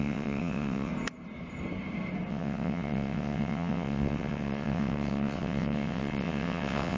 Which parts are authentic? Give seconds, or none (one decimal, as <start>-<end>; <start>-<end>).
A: 0.9-2.3